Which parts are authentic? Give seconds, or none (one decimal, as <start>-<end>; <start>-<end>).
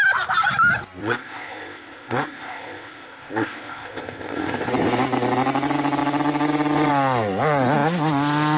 0.0-1.0; 4.7-8.6